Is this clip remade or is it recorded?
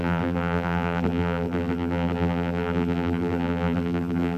remade